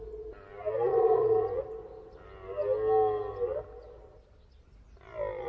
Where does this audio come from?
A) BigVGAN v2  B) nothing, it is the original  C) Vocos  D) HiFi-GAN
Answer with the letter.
B